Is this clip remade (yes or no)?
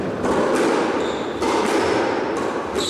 no